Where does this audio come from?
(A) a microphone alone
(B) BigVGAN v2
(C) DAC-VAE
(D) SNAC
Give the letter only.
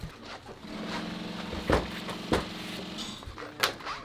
A